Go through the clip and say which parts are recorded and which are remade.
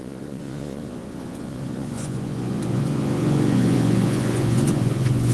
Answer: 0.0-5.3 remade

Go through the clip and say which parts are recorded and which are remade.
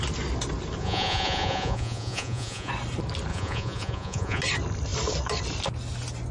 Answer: 0.0-0.8 recorded; 0.8-2.7 remade; 2.7-3.3 recorded; 3.3-4.4 remade; 4.4-6.3 recorded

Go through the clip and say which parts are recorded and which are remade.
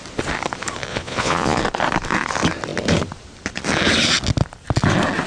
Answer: 0.0-0.9 recorded; 0.9-1.6 remade; 1.6-5.3 recorded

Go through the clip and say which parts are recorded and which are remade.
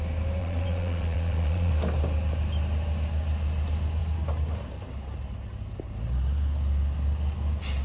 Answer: 0.0-0.4 recorded; 0.4-1.7 remade; 1.7-7.8 recorded